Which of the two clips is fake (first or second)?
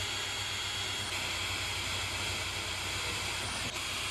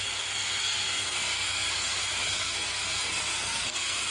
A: second